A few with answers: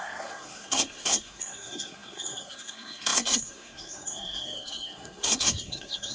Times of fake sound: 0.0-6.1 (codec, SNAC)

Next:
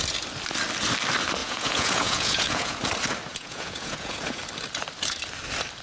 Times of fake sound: 1.4-2.8 (vocoder, Vocos); 3.3-4.4

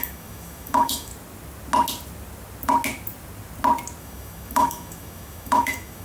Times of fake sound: 0.0-1.1 (autoencoder, DAC-VAE); 4.0-6.0

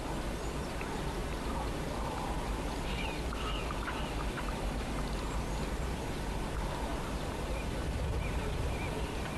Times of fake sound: 1.2-6.1 (vocoder, BigVGAN v2); 6.9-8.5